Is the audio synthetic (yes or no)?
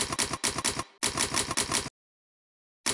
no